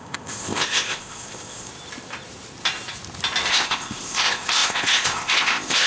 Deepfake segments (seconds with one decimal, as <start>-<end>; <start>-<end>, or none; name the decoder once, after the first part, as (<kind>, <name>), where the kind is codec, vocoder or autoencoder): 0.0-1.7 (codec, ZipCodec); 3.5-5.9